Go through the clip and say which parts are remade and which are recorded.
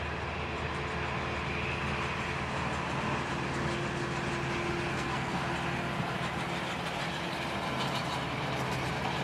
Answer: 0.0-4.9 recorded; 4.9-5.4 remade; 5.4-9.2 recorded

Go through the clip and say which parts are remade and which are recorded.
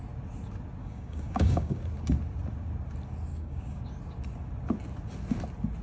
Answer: 0.0-0.8 recorded; 0.8-1.8 remade; 1.8-3.3 recorded; 3.3-3.8 remade; 3.8-5.8 recorded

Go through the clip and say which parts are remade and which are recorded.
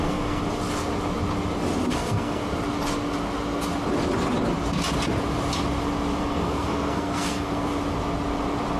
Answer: 0.0-0.4 remade; 0.4-1.9 recorded; 1.9-2.4 remade; 2.4-6.2 recorded; 6.2-7.7 remade; 7.7-8.8 recorded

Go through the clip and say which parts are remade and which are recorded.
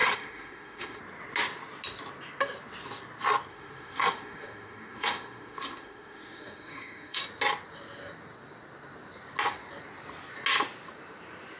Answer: 0.0-1.0 remade; 1.0-3.5 recorded; 3.5-7.2 remade; 7.2-11.6 recorded